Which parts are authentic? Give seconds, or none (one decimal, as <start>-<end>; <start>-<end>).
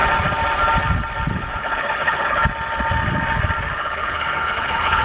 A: 0.0-1.3; 2.4-3.8